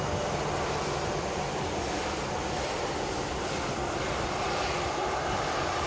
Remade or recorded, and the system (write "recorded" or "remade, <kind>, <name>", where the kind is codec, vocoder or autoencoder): recorded